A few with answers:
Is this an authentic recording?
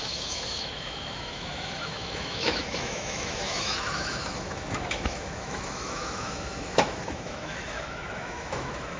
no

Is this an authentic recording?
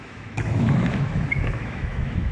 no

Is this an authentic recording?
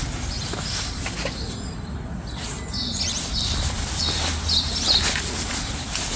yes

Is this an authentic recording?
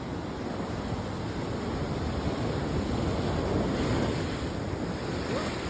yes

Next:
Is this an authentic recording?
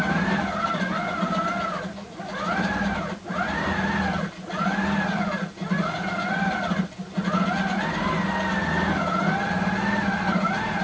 yes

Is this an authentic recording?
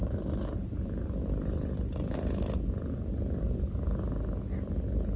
yes